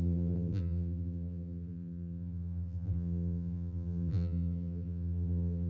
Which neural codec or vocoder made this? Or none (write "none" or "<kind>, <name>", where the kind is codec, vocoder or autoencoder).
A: vocoder, BigVGAN v2